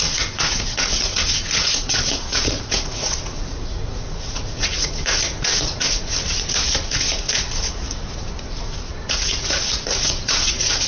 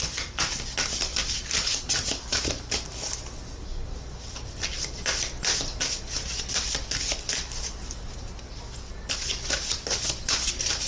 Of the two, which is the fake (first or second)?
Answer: first